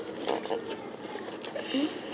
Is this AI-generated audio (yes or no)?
no